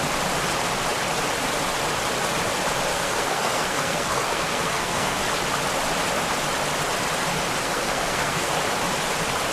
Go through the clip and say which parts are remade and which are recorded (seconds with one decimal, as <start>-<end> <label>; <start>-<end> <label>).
0.0-2.9 recorded; 2.9-5.2 remade; 5.2-7.6 recorded; 7.6-8.5 remade; 8.5-9.5 recorded